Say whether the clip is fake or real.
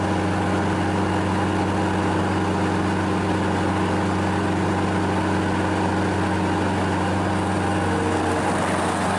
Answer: real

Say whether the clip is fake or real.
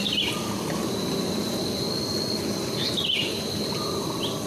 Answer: real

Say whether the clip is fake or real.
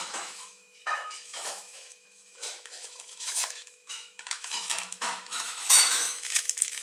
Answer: fake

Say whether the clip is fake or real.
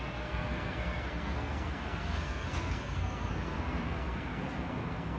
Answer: fake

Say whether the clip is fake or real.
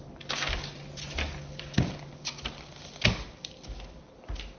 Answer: real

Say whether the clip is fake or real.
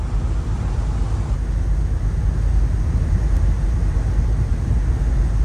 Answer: real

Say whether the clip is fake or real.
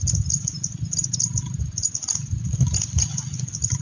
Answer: real